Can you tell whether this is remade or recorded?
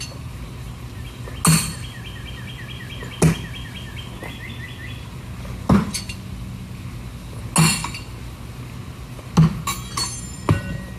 recorded